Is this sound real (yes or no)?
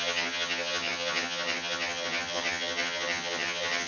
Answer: no